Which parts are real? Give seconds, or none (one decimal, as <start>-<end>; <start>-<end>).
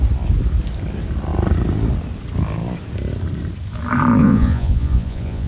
0.0-4.2